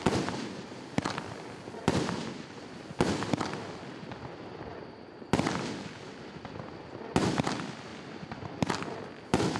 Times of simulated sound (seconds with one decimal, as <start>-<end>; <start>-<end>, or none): none